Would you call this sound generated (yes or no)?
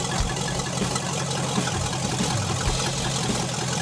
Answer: no